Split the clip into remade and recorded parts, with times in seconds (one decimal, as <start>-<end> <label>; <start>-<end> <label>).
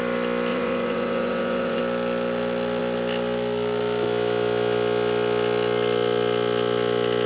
0.0-0.5 recorded; 0.5-1.8 remade; 1.8-7.3 recorded